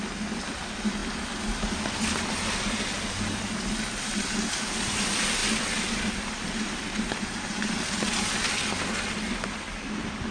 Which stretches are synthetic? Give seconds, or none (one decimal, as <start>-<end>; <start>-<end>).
none